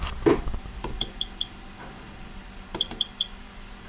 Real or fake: fake